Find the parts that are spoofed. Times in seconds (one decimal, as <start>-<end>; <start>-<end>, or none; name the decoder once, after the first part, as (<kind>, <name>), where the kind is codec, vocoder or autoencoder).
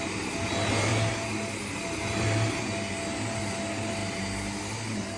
none